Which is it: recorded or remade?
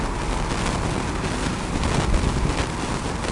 recorded